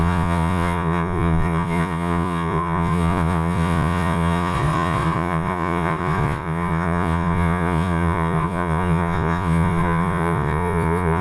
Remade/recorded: remade